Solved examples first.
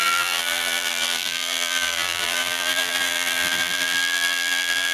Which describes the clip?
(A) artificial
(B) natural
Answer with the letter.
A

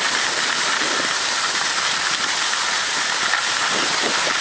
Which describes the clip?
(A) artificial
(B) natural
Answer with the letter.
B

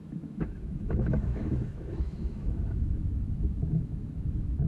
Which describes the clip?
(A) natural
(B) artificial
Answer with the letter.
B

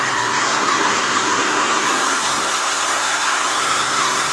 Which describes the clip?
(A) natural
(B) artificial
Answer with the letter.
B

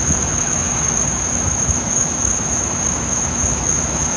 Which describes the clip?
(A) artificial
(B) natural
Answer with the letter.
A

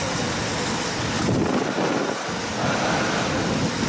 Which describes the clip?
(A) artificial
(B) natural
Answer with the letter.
B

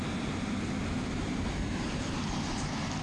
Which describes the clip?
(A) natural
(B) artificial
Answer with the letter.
A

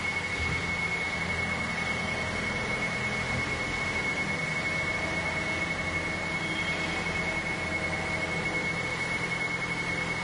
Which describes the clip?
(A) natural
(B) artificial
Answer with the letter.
A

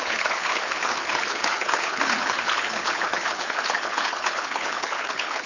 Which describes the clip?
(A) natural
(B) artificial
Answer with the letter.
B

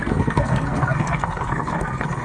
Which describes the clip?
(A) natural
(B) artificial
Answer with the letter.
B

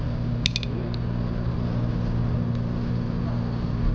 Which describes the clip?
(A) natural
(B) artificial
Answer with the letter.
A